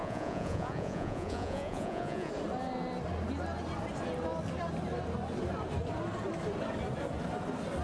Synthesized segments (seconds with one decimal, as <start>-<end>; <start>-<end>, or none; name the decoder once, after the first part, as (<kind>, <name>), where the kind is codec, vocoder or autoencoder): 0.0-2.3 (vocoder, Vocos)